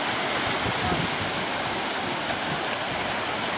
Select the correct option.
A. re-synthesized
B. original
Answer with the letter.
B